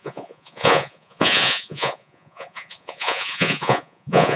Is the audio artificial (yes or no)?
yes